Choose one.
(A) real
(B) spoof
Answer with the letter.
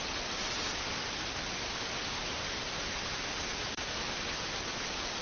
A